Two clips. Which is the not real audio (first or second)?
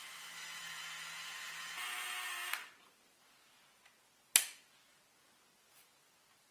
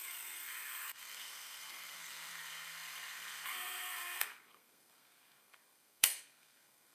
second